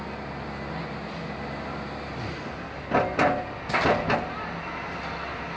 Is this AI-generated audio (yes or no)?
no